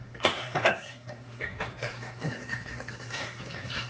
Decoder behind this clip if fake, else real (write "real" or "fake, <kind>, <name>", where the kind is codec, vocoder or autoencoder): fake, codec, SNAC